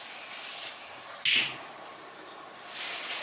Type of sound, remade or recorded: recorded